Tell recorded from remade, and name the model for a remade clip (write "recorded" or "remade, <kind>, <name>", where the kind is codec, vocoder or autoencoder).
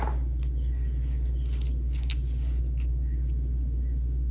recorded